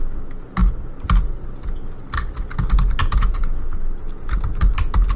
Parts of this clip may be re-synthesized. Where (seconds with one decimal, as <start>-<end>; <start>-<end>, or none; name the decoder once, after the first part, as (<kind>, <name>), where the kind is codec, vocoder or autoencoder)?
3.0-3.6 (vocoder, Vocos)